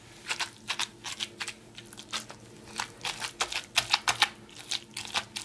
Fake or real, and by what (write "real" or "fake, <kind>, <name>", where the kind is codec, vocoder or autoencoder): real